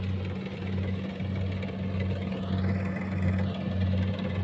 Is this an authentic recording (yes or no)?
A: yes